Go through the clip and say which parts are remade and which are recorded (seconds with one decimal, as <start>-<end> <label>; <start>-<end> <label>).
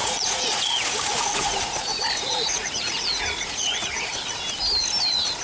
0.0-4.1 remade; 4.1-5.4 recorded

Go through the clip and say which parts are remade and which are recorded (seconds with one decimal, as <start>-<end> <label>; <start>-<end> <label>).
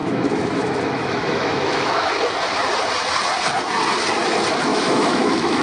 0.0-2.1 remade; 2.1-4.7 recorded; 4.7-5.6 remade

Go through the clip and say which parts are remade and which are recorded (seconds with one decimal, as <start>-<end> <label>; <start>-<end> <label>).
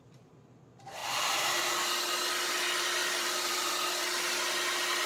0.0-1.0 recorded; 1.0-1.7 remade; 1.7-3.0 recorded; 3.0-3.7 remade; 3.7-5.1 recorded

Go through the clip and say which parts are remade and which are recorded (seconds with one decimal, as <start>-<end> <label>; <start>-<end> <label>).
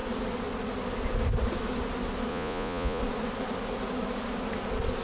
0.0-2.3 recorded; 2.3-3.0 remade; 3.0-5.0 recorded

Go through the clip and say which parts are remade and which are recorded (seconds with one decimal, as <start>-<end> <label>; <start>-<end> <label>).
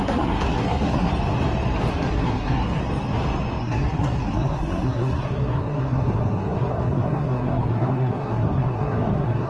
0.0-1.1 remade; 1.1-1.9 recorded; 1.9-2.8 remade; 2.8-3.6 recorded; 3.6-9.5 remade